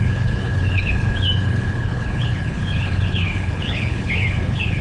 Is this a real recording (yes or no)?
no